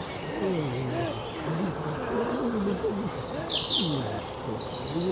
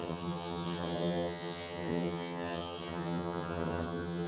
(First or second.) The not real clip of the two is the second